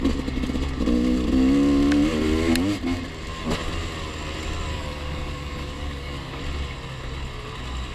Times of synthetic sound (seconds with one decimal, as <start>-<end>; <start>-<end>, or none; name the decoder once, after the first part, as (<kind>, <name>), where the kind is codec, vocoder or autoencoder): 4.7-6.4 (codec, DAC)